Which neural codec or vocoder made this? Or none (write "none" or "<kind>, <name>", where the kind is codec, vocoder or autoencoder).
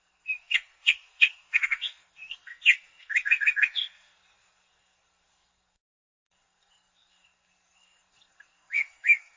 codec, SNAC